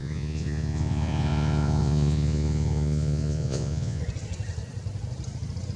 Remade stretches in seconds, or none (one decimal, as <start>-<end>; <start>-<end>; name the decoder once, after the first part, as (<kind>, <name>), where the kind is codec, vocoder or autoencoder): 0.0-4.0 (vocoder, Vocos)